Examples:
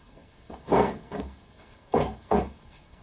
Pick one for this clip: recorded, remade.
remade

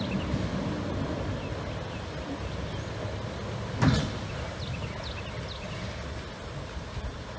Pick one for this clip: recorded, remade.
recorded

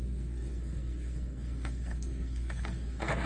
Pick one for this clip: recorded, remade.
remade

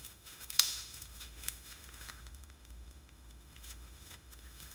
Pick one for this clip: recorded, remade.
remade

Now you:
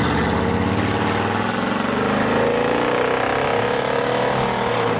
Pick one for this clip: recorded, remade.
recorded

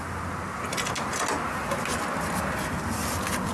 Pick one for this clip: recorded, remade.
recorded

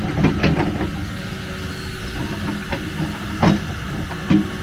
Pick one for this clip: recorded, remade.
recorded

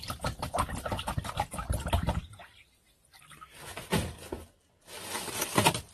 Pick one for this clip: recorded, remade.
recorded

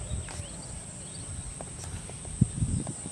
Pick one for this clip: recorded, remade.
recorded